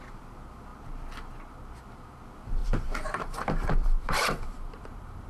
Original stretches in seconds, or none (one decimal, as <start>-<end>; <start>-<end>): 0.0-2.6